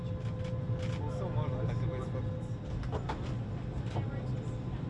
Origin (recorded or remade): recorded